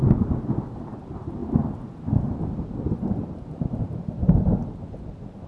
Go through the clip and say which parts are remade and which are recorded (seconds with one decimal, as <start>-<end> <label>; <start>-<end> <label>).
0.0-5.5 recorded